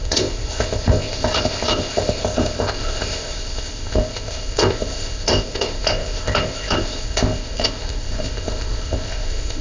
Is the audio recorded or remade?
remade